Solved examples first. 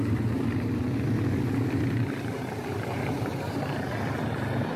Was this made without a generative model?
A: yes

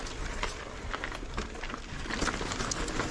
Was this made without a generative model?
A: yes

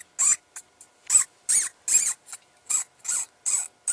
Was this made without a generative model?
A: yes